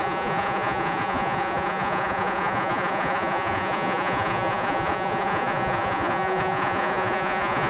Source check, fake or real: fake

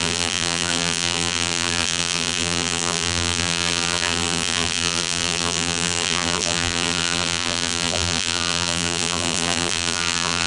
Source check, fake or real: fake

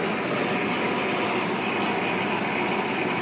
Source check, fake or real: real